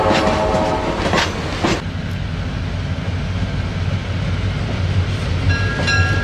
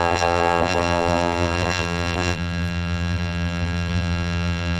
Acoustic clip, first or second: first